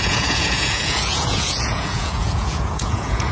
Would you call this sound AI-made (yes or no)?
yes